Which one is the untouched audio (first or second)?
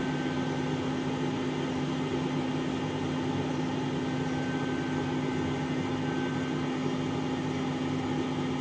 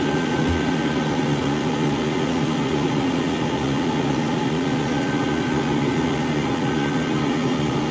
first